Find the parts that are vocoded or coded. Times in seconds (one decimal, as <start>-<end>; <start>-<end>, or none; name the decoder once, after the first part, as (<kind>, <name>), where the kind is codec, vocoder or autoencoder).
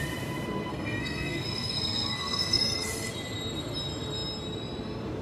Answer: 0.7-3.1 (codec, SNAC)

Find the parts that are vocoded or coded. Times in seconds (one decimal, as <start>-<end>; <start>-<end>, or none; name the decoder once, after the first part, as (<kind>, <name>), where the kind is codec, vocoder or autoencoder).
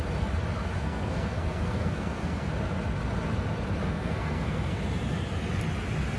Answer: 0.8-2.5 (codec, SNAC); 3.8-4.8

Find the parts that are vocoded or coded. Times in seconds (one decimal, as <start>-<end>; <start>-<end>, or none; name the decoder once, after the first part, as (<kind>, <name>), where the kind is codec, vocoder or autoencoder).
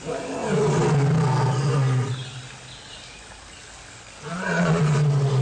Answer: 4.3-4.8 (vocoder, Vocos)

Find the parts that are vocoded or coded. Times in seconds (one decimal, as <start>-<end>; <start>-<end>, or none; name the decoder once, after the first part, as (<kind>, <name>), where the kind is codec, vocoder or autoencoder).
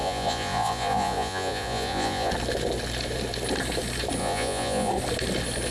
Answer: 0.0-2.3 (vocoder, Vocos); 4.2-4.9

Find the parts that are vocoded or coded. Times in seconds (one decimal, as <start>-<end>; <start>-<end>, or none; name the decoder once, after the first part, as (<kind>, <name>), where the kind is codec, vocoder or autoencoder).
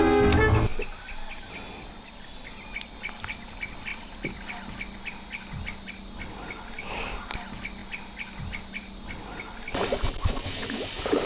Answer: none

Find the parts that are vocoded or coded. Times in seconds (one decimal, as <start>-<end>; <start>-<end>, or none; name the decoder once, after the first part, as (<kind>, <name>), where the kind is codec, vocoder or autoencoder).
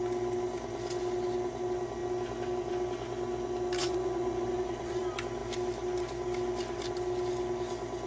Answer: 3.8-5.0 (vocoder, Vocos)